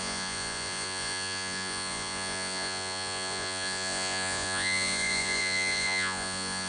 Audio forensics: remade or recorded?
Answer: remade